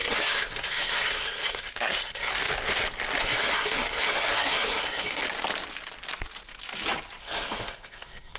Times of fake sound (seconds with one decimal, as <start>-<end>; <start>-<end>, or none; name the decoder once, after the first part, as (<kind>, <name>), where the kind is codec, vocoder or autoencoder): 0.0-2.3 (codec, SNAC); 3.2-5.2; 7.2-8.4